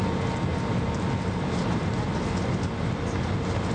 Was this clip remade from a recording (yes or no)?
no